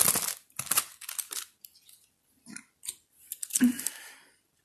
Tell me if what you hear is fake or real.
real